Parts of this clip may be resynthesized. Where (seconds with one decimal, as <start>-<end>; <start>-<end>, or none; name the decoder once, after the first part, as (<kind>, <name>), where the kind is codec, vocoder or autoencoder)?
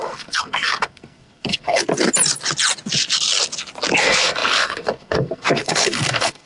0.0-1.9 (codec, SNAC); 4.0-6.5